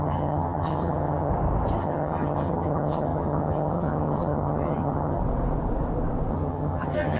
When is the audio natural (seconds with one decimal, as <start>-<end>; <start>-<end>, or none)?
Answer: 1.3-1.8; 5.2-6.3